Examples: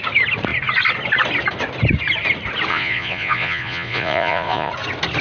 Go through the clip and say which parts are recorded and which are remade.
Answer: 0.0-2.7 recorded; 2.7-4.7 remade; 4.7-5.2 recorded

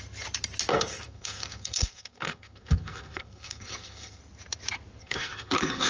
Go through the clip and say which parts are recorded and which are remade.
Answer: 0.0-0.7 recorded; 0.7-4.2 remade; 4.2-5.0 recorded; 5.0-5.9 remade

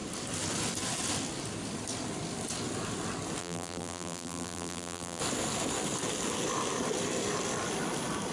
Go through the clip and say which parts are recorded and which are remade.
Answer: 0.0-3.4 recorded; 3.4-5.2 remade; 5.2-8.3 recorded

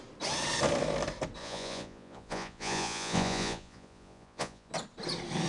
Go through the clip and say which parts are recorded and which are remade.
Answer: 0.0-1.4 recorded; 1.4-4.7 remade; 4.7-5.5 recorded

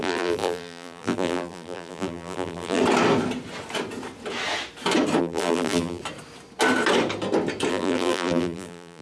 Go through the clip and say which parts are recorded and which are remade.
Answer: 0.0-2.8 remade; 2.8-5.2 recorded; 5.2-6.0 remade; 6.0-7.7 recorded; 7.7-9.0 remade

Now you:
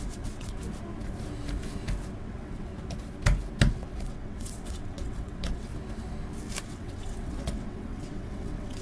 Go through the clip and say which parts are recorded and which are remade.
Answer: 0.0-0.6 remade; 0.6-2.2 recorded; 2.2-2.7 remade; 2.7-3.7 recorded; 3.7-5.7 remade; 5.7-6.6 recorded; 6.6-8.8 remade

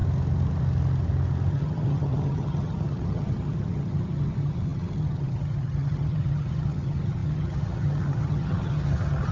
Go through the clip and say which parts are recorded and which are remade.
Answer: 0.0-1.5 recorded; 1.5-9.3 remade

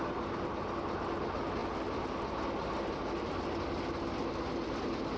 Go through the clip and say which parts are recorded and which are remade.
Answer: 0.0-5.2 recorded